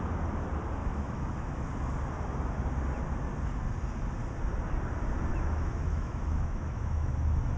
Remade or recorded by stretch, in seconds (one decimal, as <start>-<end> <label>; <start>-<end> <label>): 0.0-0.8 recorded; 0.8-1.7 remade; 1.7-5.3 recorded; 5.3-7.1 remade; 7.1-7.6 recorded